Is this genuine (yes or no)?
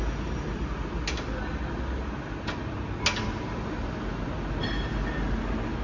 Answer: yes